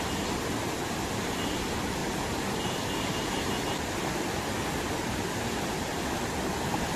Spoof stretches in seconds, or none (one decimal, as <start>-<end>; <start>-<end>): 2.0-6.2